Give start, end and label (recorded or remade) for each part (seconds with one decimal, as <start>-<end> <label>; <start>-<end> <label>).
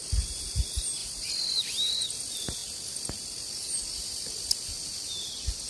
0.0-5.7 recorded